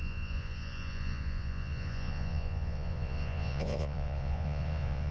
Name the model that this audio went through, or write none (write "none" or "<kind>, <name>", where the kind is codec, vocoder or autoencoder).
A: vocoder, Vocos